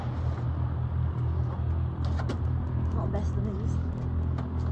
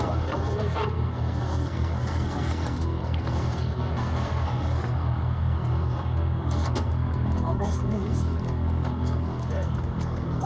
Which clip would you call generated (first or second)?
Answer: second